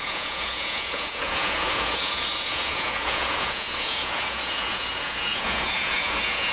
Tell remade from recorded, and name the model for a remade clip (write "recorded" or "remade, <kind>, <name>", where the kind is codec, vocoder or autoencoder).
remade, vocoder, Vocos